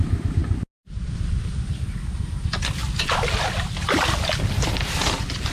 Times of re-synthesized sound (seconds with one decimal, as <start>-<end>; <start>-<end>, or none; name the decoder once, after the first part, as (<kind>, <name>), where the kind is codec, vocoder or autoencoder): none